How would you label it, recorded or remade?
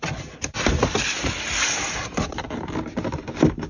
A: recorded